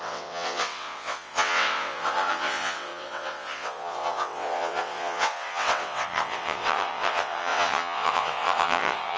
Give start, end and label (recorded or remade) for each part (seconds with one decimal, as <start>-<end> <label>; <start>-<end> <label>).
0.0-9.2 remade